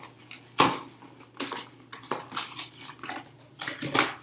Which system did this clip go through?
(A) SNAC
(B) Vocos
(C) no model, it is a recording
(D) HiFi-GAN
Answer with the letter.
C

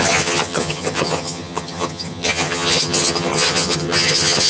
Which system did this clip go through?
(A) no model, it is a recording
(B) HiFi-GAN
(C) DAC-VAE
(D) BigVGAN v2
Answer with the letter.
B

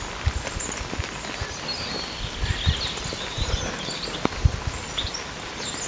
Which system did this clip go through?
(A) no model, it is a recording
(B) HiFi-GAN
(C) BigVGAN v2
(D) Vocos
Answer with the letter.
A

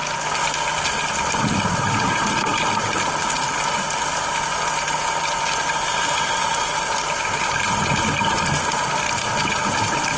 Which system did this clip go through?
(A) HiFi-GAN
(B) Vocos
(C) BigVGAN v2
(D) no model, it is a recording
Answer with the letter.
D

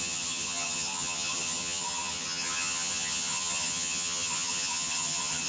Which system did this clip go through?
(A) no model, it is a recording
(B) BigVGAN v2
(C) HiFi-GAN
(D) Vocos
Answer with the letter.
C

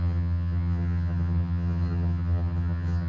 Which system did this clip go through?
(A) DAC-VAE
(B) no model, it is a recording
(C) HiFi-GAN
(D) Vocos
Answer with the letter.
C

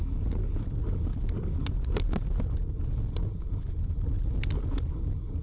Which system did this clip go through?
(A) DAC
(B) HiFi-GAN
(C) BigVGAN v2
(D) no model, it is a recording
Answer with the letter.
D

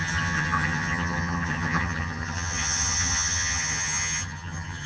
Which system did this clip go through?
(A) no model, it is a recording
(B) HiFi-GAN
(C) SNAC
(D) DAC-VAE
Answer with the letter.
B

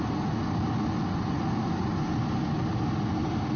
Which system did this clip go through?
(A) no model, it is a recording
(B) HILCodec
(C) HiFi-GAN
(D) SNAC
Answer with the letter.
A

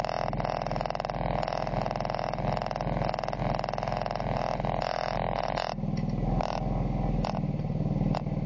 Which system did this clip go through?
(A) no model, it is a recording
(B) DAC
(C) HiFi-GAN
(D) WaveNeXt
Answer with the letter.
A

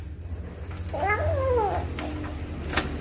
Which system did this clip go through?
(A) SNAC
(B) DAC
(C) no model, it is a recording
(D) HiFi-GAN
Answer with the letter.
C